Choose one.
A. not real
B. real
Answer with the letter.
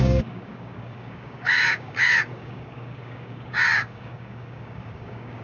A